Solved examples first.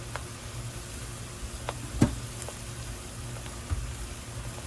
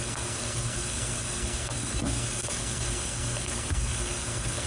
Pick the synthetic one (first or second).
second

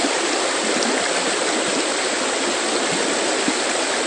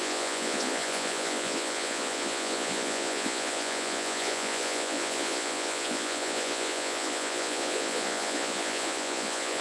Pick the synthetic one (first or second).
second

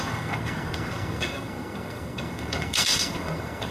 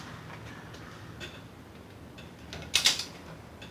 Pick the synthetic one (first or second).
first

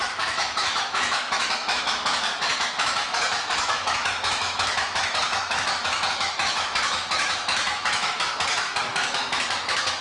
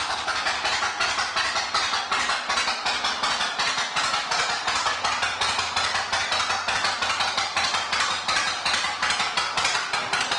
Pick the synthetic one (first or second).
first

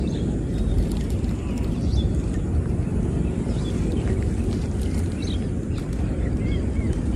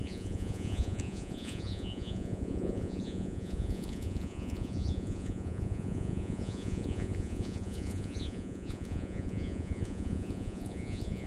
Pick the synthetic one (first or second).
second